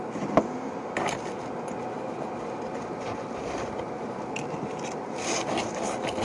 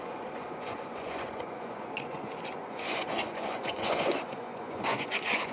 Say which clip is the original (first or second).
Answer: first